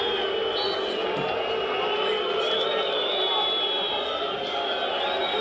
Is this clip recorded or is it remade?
recorded